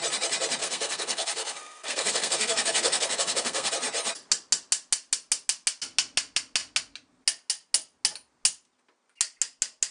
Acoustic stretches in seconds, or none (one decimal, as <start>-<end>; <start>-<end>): 0.0-0.6; 3.7-9.9